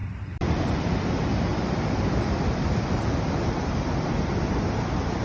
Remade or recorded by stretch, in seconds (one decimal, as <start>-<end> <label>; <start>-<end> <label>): 0.0-0.8 remade; 0.8-1.5 recorded; 1.5-4.3 remade; 4.3-5.2 recorded